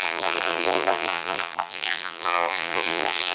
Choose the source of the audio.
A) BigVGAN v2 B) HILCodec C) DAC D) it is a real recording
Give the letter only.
A